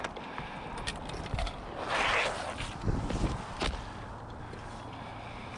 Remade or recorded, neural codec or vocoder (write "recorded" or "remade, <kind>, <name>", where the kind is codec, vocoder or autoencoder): recorded